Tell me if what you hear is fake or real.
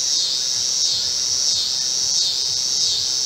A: real